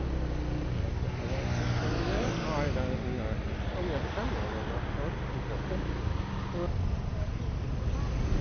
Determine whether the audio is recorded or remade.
recorded